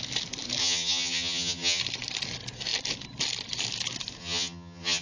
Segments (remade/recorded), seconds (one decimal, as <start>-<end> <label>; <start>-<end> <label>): 0.0-0.6 recorded; 0.6-1.8 remade; 1.8-4.2 recorded; 4.2-5.0 remade